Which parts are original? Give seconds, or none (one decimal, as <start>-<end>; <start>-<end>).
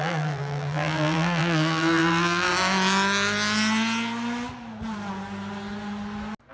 2.5-6.5